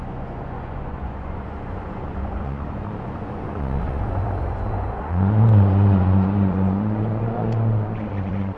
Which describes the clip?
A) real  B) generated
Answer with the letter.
B